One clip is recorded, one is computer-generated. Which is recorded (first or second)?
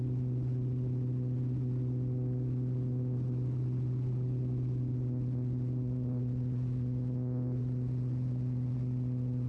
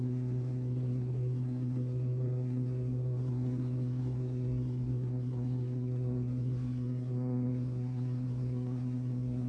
first